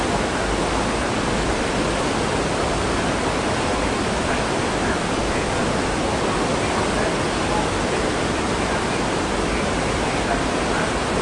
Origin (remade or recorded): recorded